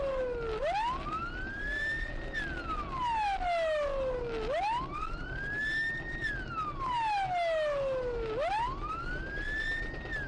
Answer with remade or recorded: recorded